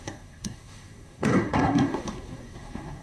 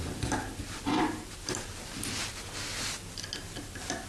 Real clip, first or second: second